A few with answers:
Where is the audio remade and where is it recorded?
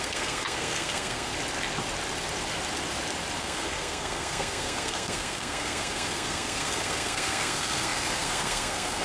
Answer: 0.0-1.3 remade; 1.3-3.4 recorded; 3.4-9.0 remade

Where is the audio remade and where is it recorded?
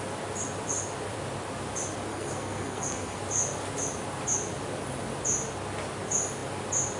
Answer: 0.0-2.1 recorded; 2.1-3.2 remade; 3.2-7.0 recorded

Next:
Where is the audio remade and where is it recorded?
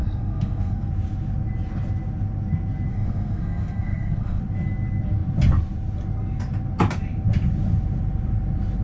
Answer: 0.0-0.9 remade; 0.9-2.9 recorded; 2.9-4.4 remade; 4.4-8.8 recorded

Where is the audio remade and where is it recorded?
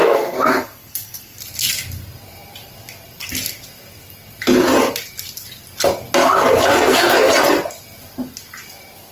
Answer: 0.0-1.4 remade; 1.4-6.7 recorded; 6.7-7.3 remade; 7.3-9.1 recorded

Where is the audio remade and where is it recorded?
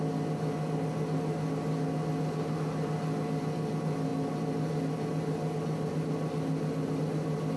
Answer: 0.0-7.6 recorded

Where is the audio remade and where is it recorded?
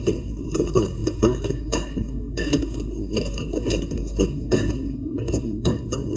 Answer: 0.0-6.2 remade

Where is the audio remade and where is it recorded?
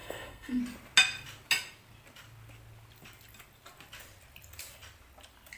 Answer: 0.0-0.6 remade; 0.6-5.6 recorded